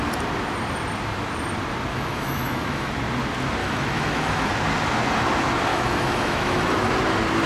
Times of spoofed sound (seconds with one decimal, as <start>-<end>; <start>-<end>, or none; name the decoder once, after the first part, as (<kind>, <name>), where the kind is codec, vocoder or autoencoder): 1.9-2.9 (autoencoder, DAC-VAE); 3.6-4.5; 5.7-6.9